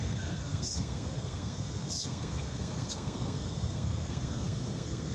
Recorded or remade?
remade